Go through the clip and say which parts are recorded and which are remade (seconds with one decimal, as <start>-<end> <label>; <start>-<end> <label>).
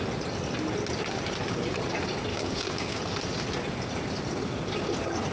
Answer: 0.0-2.3 recorded; 2.3-3.0 remade; 3.0-5.3 recorded